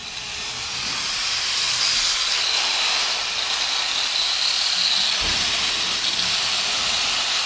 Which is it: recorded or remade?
remade